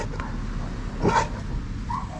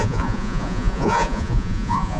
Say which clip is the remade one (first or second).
second